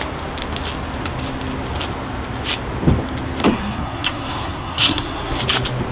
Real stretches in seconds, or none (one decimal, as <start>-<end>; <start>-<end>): 0.0-3.5; 5.4-5.9